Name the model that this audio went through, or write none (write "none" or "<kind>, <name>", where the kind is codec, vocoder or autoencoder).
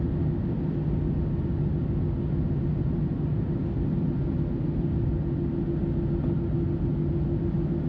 none